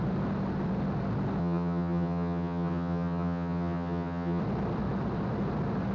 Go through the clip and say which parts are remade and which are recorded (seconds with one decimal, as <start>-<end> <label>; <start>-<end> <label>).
0.0-1.4 recorded; 1.4-4.4 remade; 4.4-5.9 recorded